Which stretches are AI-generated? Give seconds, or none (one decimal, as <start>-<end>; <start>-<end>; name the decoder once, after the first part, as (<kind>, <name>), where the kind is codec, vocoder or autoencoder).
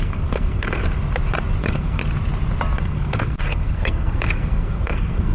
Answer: 0.0-0.8 (codec, SNAC); 1.6-2.0; 2.8-5.3